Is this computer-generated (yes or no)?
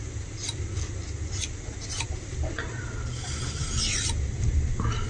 no